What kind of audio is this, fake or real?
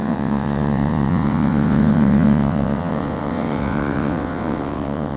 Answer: fake